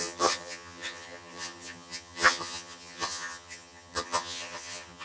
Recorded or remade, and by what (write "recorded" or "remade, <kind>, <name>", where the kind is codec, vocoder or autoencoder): remade, vocoder, HiFi-GAN